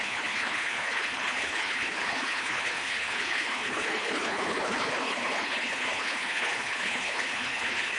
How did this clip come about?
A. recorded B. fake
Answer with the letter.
B